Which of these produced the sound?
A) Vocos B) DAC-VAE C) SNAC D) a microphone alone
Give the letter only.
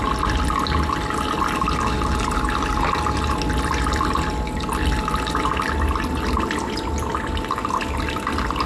D